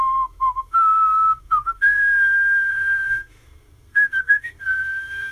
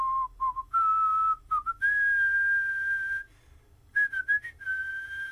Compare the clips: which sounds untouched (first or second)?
second